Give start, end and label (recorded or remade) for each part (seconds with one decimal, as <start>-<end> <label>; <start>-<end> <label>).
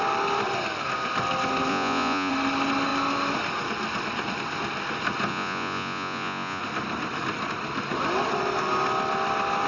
0.0-1.7 recorded; 1.7-2.3 remade; 2.3-5.3 recorded; 5.3-6.6 remade; 6.6-9.7 recorded